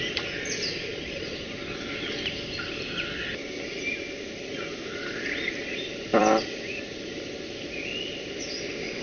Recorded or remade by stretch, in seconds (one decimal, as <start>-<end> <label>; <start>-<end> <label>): 0.0-6.1 recorded; 6.1-6.8 remade; 6.8-9.0 recorded